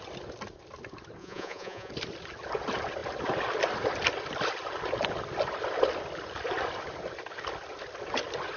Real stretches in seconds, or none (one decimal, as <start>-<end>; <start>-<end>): 0.0-1.2; 1.9-8.6